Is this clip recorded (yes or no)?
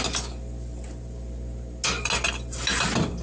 yes